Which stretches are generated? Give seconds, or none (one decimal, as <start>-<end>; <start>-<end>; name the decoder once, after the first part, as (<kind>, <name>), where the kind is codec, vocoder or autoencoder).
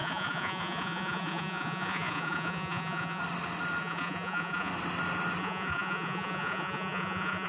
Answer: 0.0-3.2 (vocoder, Vocos); 3.8-4.7; 5.4-7.5